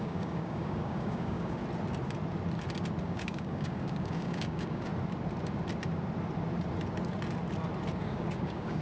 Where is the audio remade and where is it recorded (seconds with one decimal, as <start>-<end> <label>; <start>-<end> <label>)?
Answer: 0.0-1.6 remade; 1.6-3.0 recorded; 3.0-4.9 remade; 4.9-8.0 recorded; 8.0-8.8 remade